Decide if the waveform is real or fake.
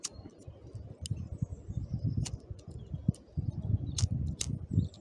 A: real